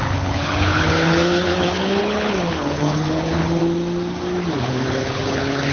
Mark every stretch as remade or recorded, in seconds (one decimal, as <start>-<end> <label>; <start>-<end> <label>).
0.0-3.6 remade; 3.6-4.5 recorded; 4.5-5.7 remade